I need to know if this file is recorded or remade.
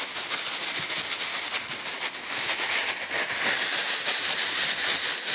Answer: recorded